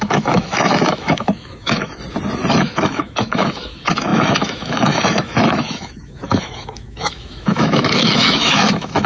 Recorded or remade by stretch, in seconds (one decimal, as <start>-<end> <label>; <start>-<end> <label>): 0.0-2.0 remade; 2.0-2.5 recorded; 2.5-9.1 remade

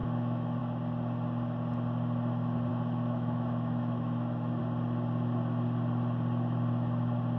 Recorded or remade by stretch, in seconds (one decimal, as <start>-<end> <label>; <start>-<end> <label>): 0.0-0.6 remade; 0.6-2.7 recorded; 2.7-4.6 remade; 4.6-7.4 recorded

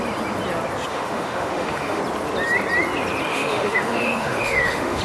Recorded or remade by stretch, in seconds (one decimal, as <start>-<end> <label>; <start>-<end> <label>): 0.0-0.9 recorded; 0.9-2.0 remade; 2.0-3.3 recorded; 3.3-5.0 remade

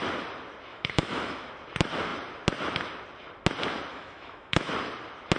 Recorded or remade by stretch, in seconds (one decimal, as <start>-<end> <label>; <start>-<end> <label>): 0.0-0.7 recorded; 0.7-1.5 remade; 1.5-3.9 recorded; 3.9-4.7 remade; 4.7-5.4 recorded

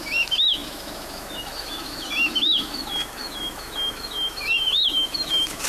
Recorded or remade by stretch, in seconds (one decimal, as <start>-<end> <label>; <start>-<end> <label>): 0.0-5.7 remade

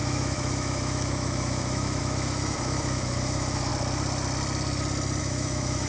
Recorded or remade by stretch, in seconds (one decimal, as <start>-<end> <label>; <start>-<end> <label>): 0.0-3.7 remade; 3.7-5.2 recorded; 5.2-5.9 remade

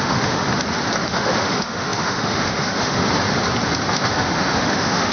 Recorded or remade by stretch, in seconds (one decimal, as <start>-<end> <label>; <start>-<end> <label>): 0.0-0.4 remade; 0.4-1.0 recorded; 1.0-3.0 remade; 3.0-3.9 recorded; 3.9-5.1 remade